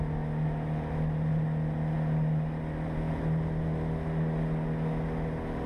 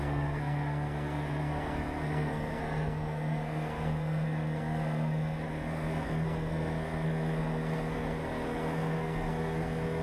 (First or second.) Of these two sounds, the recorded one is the first